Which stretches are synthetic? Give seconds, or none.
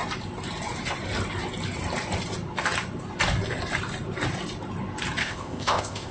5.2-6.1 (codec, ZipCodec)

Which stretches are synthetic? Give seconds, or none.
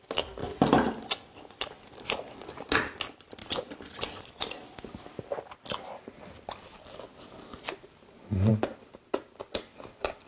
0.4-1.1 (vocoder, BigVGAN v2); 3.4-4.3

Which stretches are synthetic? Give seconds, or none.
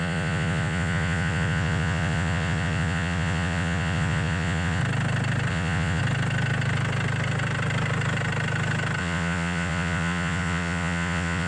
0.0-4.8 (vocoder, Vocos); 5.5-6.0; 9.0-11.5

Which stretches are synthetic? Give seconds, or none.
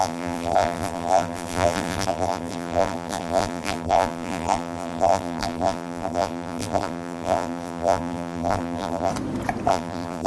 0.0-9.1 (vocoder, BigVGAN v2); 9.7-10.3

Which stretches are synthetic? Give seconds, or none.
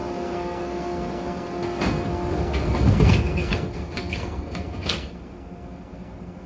0.0-6.5 (codec, SNAC)